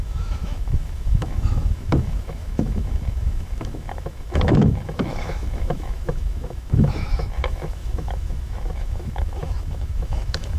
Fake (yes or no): yes